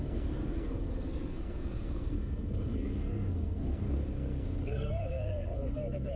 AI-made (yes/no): yes